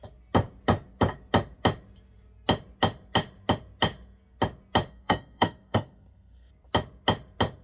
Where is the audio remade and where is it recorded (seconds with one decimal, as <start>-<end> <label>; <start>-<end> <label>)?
0.0-4.9 recorded; 4.9-6.5 remade; 6.5-7.6 recorded